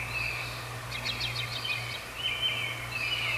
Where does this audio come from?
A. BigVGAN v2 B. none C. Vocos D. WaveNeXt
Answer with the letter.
B